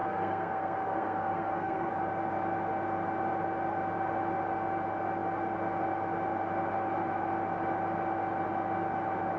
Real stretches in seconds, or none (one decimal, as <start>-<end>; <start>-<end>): 1.9-9.4